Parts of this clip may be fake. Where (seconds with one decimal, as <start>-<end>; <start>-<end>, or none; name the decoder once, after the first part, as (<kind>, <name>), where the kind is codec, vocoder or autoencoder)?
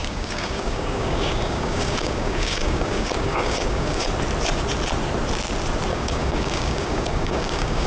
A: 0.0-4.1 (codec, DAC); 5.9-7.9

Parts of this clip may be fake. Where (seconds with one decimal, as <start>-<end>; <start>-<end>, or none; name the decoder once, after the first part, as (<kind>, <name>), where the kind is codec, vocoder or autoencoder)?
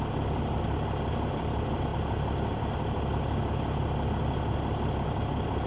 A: none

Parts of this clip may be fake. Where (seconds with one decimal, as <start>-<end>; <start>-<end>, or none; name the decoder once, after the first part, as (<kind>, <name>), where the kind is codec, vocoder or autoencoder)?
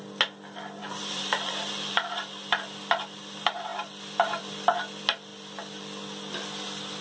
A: 0.8-1.9 (vocoder, BigVGAN v2)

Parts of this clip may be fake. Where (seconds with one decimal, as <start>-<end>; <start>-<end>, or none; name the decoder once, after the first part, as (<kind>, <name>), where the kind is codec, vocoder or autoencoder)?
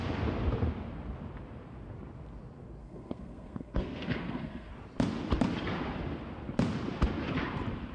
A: 2.8-4.7 (codec, SNAC)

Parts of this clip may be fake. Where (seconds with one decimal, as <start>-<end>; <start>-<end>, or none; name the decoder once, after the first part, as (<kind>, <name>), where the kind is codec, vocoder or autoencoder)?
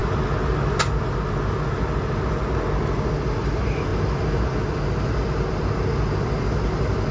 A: none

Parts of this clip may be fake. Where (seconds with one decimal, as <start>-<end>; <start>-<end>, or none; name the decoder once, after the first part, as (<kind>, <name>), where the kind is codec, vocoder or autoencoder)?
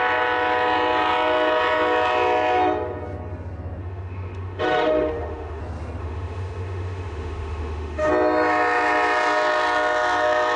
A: 3.8-5.6 (autoencoder, DAC-VAE); 6.0-8.1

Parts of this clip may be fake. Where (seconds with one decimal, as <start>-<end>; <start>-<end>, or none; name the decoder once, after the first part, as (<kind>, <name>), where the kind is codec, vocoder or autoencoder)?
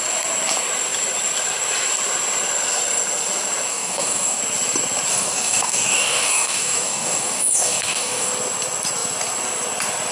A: 3.7-4.4 (codec, DAC); 5.1-8.3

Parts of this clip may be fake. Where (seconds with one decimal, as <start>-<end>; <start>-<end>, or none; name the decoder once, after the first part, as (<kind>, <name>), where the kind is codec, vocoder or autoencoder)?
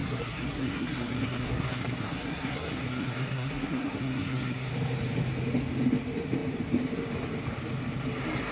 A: 0.0-4.7 (codec, SNAC)